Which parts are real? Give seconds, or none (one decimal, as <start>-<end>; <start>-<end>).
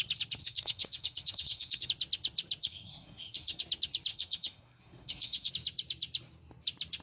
0.0-0.4; 1.9-2.6; 3.6-4.1; 5.5-7.0